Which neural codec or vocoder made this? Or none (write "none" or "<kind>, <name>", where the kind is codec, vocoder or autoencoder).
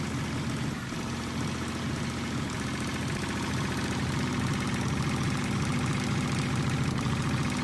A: none